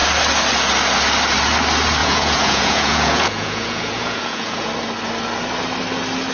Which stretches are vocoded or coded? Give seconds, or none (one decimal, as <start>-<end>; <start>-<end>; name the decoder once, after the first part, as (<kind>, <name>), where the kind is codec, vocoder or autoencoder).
2.0-4.7 (vocoder, Vocos)